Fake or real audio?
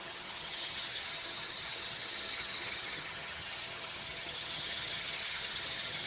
fake